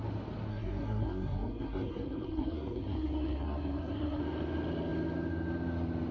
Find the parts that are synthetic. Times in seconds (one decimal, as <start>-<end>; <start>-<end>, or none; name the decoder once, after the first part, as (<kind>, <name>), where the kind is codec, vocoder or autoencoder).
0.5-4.2 (codec, SNAC)